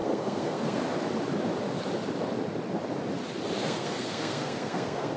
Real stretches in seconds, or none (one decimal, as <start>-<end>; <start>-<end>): 0.8-3.6